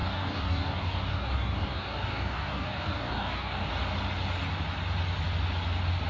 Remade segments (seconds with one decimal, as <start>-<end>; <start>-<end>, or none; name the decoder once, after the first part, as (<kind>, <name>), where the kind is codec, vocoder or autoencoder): 0.0-3.7 (codec, DAC)